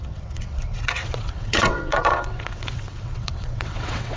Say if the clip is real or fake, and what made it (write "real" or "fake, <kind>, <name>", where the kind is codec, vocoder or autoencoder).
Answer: fake, vocoder, WaveNeXt